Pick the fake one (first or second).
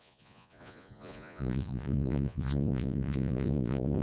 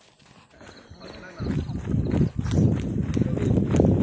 first